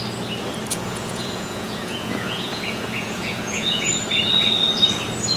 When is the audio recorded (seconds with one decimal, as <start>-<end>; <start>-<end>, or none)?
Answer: 0.0-0.7; 3.9-5.4